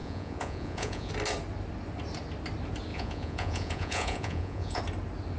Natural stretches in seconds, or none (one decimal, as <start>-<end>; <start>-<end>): 1.1-2.9; 4.8-5.4